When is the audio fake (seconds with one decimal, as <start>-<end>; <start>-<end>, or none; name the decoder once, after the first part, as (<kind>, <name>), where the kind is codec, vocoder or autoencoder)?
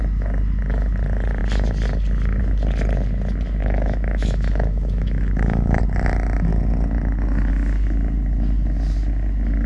3.6-5.8 (autoencoder, DAC-VAE)